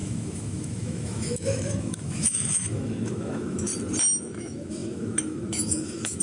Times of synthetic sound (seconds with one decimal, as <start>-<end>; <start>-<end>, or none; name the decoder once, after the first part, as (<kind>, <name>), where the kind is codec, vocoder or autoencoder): 0.0-3.7 (autoencoder, DAC-VAE); 4.2-6.2